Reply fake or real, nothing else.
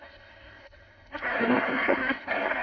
fake